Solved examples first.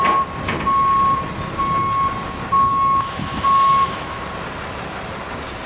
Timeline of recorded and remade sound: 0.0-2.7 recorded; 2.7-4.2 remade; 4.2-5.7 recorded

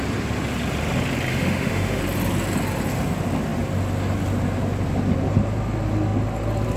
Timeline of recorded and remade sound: 0.0-1.3 recorded; 1.3-2.0 remade; 2.0-6.8 recorded

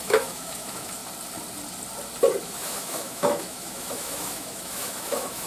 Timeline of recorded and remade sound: 0.0-1.0 remade; 1.0-2.4 recorded; 2.4-5.5 remade

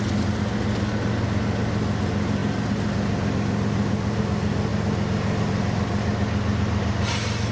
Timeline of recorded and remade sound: 0.0-7.5 recorded

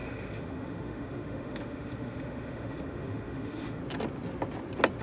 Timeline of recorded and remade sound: 0.0-3.8 remade; 3.8-5.0 recorded